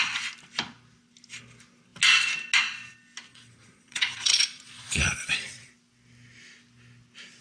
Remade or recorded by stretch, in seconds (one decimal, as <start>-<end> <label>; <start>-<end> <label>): 0.0-3.3 recorded; 3.3-5.7 remade; 5.7-7.4 recorded